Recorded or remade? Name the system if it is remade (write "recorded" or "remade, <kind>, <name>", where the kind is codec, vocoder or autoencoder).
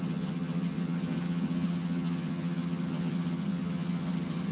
remade, vocoder, HiFi-GAN